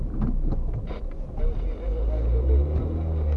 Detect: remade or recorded recorded